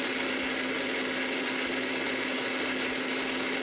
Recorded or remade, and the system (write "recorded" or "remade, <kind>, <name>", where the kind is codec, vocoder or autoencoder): recorded